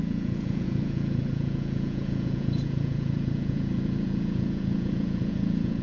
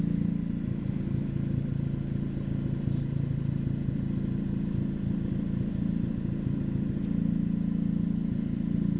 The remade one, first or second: first